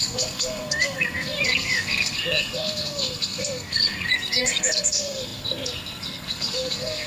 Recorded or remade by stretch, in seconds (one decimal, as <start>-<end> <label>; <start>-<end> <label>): 0.0-7.1 remade

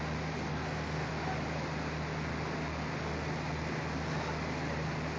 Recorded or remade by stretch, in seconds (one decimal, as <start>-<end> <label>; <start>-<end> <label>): 0.0-0.5 recorded; 0.5-1.1 remade; 1.1-5.2 recorded

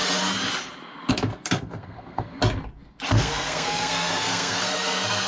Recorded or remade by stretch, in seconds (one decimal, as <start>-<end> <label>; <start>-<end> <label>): 0.0-1.1 recorded; 1.1-2.4 remade; 2.4-3.1 recorded; 3.1-5.3 remade

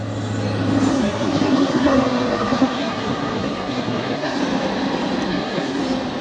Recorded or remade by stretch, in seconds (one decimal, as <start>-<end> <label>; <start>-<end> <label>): 0.0-0.9 recorded; 0.9-4.4 remade; 4.4-5.3 recorded; 5.3-5.8 remade; 5.8-6.2 recorded

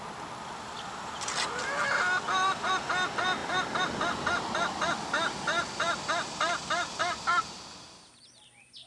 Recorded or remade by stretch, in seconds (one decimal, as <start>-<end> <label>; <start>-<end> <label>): 0.0-8.9 recorded